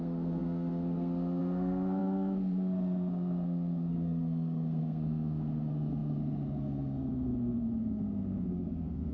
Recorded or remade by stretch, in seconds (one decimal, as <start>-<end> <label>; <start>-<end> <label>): 0.0-9.1 remade